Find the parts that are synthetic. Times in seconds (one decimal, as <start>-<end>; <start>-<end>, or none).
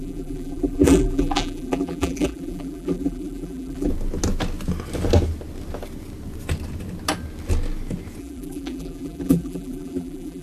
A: 0.0-3.9; 8.2-10.4